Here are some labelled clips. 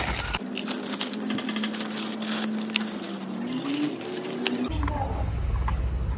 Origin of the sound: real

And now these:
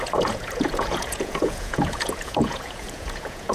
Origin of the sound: fake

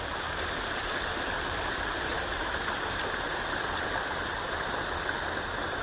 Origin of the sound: real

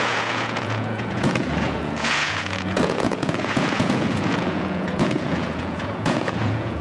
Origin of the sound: fake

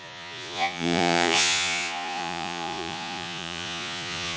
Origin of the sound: fake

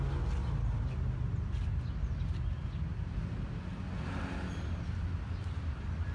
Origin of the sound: real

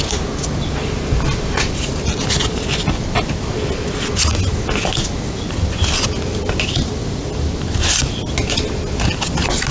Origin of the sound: real